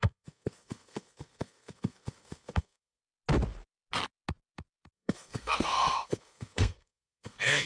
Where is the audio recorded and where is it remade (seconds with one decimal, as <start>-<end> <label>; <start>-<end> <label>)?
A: 0.0-3.0 remade; 3.0-4.9 recorded; 4.9-7.7 remade